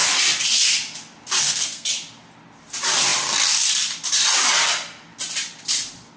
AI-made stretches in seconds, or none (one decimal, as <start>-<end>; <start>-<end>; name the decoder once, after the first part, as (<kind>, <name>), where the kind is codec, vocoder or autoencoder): 1.4-1.9 (codec, SNAC)